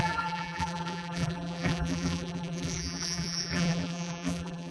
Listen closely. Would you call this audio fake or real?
fake